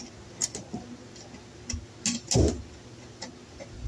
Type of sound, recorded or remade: recorded